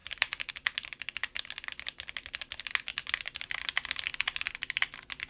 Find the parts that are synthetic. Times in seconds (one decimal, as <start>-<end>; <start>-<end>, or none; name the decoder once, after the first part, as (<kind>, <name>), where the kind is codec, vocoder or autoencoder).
0.0-0.5 (vocoder, BigVGAN v2)